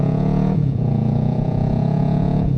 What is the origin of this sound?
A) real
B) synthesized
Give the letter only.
B